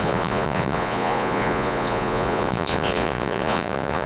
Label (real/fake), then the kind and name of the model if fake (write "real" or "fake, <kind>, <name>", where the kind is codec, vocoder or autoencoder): fake, vocoder, Vocos